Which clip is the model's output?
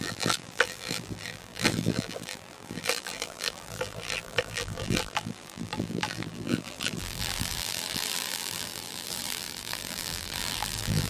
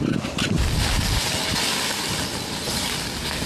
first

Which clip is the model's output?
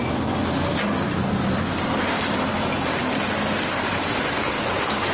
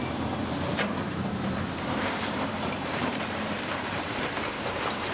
second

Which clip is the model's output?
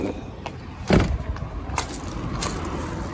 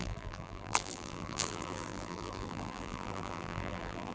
second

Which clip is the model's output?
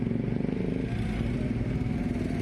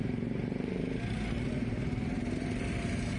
second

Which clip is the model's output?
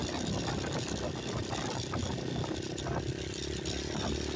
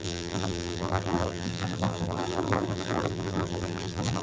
second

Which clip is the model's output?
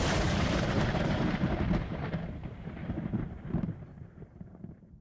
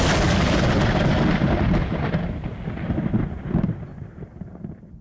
first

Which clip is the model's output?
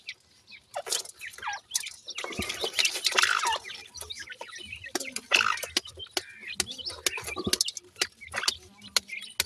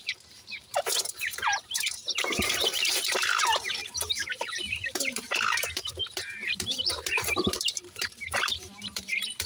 second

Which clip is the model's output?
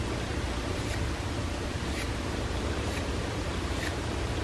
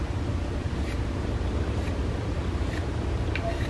first